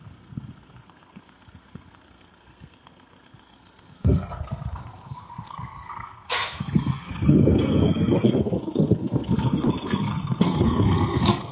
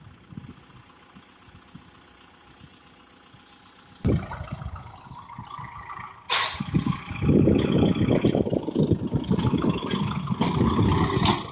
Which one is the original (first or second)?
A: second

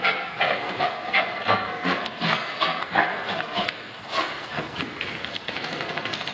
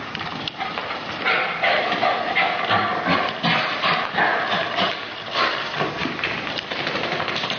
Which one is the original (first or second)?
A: second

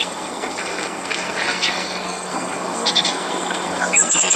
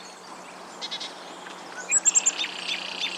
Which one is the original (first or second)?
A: second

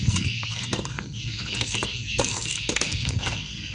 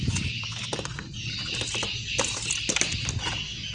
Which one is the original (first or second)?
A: second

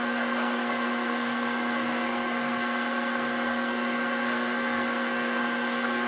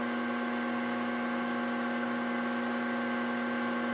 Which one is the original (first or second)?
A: second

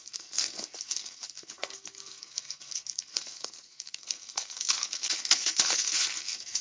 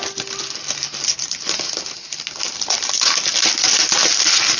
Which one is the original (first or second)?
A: second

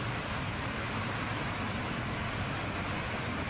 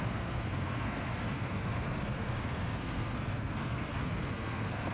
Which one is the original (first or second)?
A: first